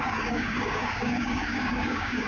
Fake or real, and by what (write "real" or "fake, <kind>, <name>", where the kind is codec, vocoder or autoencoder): fake, codec, DAC